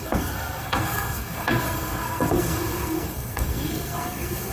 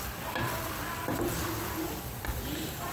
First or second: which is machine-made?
first